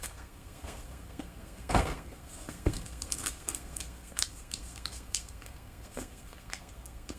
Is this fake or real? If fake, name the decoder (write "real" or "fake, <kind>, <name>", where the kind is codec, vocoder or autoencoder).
fake, codec, SNAC